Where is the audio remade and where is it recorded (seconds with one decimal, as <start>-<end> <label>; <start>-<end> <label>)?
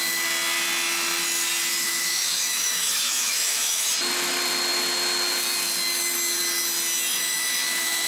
0.0-1.7 recorded; 1.7-3.9 remade; 3.9-7.1 recorded; 7.1-8.1 remade